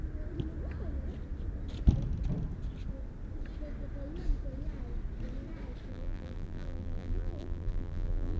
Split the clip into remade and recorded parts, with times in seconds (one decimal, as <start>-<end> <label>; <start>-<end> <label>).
0.0-5.9 recorded; 5.9-8.4 remade